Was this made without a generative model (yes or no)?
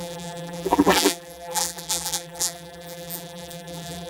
no